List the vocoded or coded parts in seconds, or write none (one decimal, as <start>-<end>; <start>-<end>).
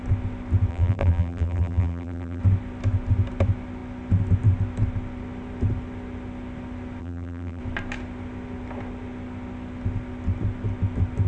0.7-2.4; 7.0-7.6